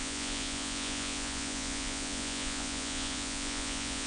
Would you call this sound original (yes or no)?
no